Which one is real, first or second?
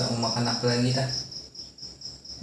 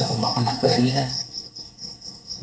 first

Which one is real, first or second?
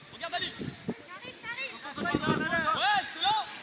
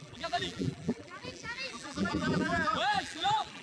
first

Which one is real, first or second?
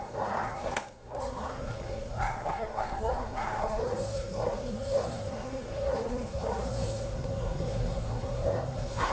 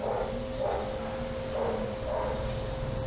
second